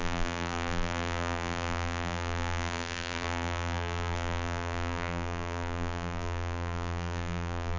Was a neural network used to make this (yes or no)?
yes